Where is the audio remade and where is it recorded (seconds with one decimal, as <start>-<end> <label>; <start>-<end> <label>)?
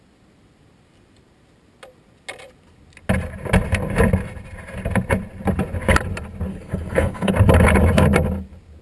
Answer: 0.0-6.5 recorded; 6.5-7.3 remade; 7.3-8.8 recorded